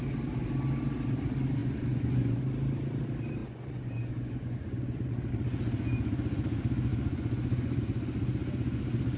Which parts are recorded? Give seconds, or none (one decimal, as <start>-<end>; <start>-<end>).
0.0-1.6; 2.4-3.4; 5.3-6.9; 7.8-9.2